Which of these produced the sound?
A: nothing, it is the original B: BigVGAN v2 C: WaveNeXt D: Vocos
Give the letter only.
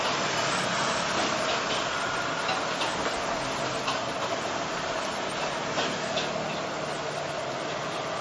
A